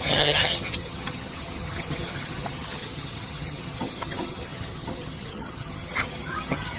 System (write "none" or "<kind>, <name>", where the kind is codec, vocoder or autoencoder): vocoder, HiFi-GAN